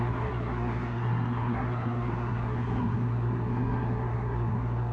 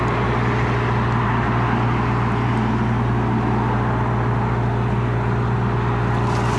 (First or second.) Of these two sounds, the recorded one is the second